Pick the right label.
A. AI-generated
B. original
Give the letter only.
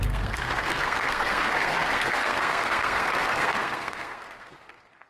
A